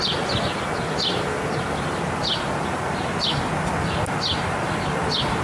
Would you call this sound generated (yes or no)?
no